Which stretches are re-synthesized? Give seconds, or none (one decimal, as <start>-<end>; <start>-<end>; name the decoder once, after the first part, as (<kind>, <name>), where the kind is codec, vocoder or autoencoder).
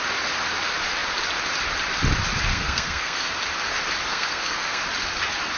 2.5-3.3 (codec, SNAC); 4.1-4.8